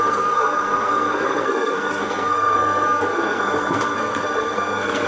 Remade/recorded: remade